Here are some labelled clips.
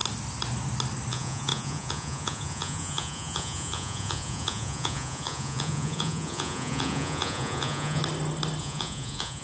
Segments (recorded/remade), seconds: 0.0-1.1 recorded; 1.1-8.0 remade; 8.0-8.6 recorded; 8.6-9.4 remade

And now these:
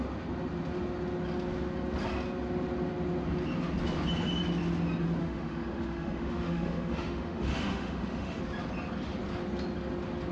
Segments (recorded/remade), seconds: 0.0-5.2 recorded; 5.2-8.4 remade; 8.4-10.3 recorded